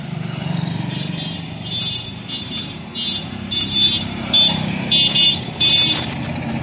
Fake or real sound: fake